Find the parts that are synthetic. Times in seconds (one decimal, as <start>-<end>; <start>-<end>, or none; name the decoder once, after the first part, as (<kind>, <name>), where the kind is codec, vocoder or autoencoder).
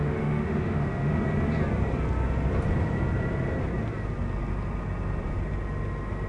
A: 0.0-1.1 (autoencoder, DAC-VAE)